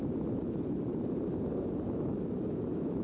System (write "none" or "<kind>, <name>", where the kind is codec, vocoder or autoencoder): vocoder, BigVGAN v2